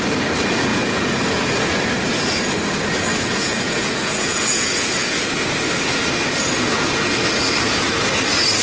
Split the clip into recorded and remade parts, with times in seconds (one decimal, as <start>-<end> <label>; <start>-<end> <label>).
0.0-0.7 recorded; 0.7-1.2 remade; 1.2-3.1 recorded; 3.1-5.2 remade; 5.2-8.6 recorded